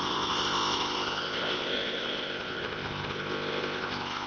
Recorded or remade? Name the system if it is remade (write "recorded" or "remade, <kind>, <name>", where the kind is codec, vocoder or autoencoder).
remade, codec, ZipCodec